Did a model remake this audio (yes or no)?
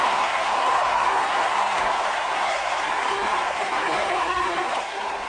yes